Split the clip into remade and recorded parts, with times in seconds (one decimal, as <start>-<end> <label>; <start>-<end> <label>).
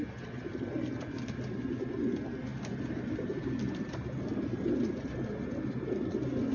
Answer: 0.0-6.5 recorded